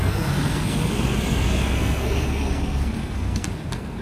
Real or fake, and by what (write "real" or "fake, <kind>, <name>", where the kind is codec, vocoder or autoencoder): fake, codec, SNAC